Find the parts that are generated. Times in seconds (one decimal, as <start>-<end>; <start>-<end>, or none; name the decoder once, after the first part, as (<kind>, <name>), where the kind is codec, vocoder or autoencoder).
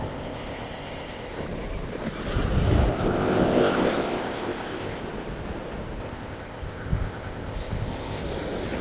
0.0-1.4 (codec, ZipCodec); 2.9-5.0; 6.0-8.2